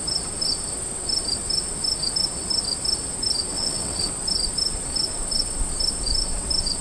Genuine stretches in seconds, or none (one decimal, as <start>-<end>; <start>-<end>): 0.0-3.5; 4.1-6.8